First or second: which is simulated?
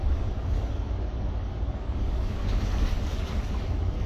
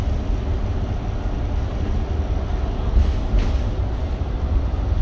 first